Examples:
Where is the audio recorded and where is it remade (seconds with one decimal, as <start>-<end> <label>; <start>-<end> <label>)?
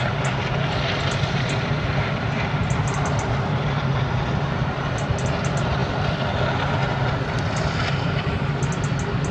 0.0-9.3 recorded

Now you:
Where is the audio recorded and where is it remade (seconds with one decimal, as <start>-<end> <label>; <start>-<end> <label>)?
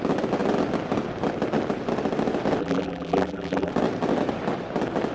0.0-2.6 recorded; 2.6-3.7 remade; 3.7-5.1 recorded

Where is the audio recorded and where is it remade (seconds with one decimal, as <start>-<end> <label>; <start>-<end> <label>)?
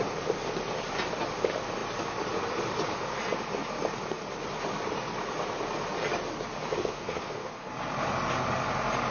0.0-6.8 recorded; 6.8-7.7 remade; 7.7-9.1 recorded